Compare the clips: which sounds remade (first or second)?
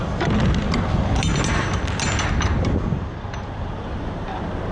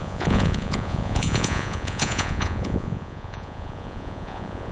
second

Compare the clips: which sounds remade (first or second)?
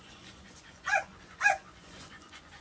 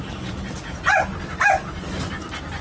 first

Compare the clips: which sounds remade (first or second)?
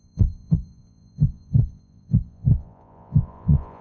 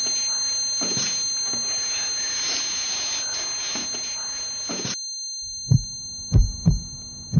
first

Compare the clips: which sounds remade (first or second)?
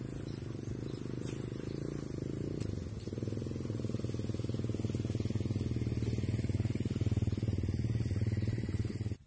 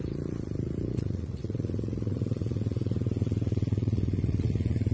second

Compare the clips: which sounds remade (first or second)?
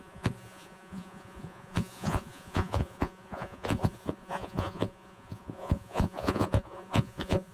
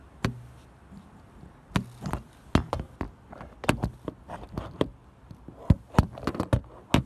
first